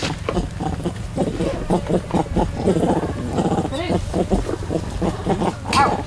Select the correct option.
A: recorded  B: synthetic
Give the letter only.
A